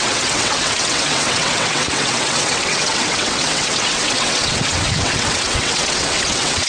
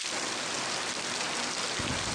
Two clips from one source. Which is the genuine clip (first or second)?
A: second